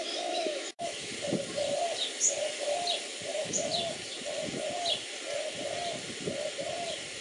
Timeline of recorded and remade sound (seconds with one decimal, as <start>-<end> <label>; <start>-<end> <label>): 0.0-1.1 remade; 1.1-3.3 recorded; 3.3-3.7 remade; 3.7-7.2 recorded